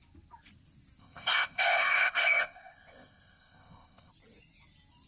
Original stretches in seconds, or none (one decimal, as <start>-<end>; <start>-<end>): 0.0-1.0; 4.1-5.1

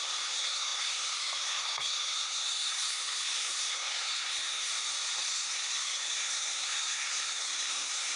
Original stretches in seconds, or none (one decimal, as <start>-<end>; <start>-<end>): 4.7-5.2